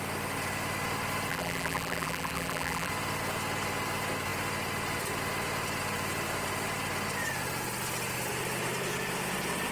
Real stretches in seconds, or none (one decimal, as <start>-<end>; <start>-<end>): 0.0-1.3; 2.9-9.7